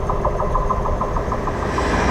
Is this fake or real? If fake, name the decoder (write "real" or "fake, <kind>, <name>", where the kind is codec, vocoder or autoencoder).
real